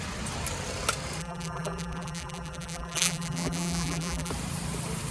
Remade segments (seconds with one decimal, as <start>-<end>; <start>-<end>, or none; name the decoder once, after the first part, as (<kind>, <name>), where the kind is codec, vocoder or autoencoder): 1.2-4.3 (vocoder, BigVGAN v2)